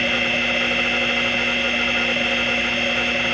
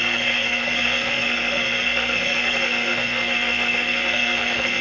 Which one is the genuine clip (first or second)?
first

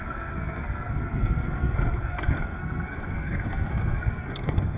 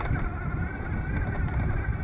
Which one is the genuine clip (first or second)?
second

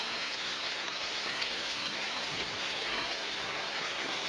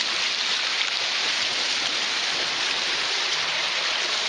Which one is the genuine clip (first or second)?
second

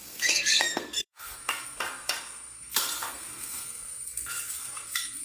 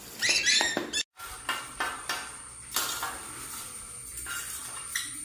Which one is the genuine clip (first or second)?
second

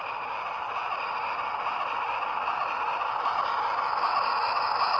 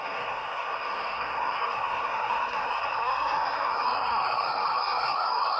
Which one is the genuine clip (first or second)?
first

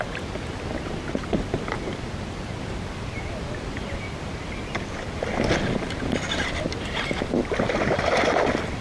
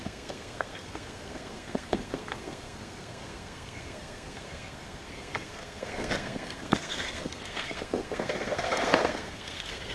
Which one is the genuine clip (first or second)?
first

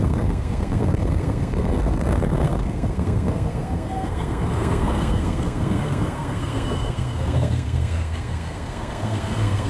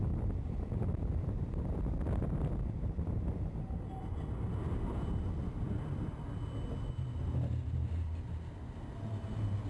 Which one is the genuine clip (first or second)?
second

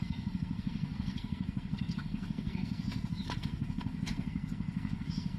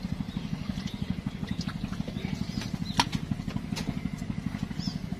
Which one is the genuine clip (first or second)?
second